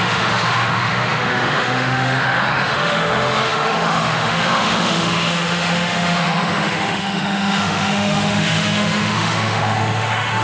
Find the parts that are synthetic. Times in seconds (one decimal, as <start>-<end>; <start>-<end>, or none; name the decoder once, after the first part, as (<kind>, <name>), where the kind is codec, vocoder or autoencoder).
0.0-10.4 (autoencoder, DAC-VAE)